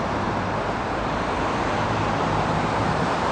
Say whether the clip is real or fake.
fake